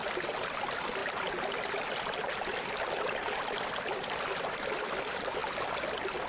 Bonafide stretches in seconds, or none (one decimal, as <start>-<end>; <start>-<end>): 0.0-6.3